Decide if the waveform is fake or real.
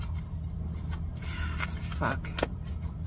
real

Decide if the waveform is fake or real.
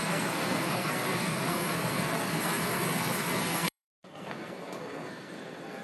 fake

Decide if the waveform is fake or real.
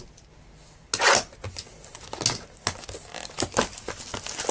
real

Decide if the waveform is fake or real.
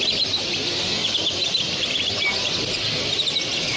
real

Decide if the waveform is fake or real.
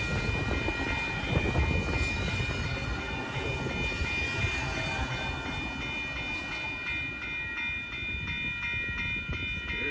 real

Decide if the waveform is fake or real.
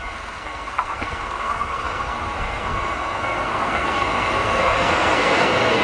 fake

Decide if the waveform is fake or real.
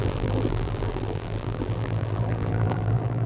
fake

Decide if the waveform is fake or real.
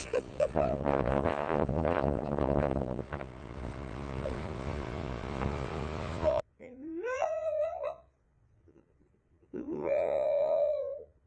fake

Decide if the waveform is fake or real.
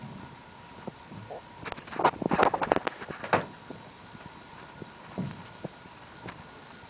real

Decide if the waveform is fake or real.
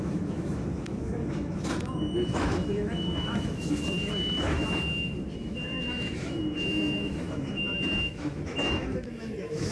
fake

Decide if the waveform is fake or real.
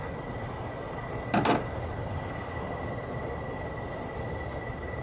real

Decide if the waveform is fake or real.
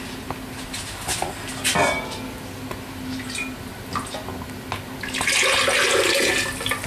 real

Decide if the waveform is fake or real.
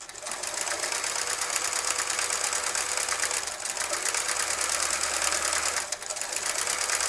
real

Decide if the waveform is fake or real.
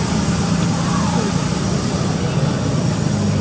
real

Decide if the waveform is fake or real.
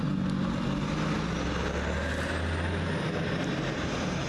real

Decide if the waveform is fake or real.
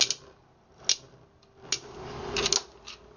real